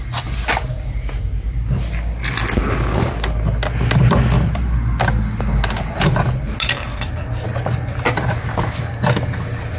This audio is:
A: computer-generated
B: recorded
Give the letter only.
B